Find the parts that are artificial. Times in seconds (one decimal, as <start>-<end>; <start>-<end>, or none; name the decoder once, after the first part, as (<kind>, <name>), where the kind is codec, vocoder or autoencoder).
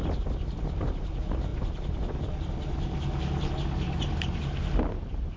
none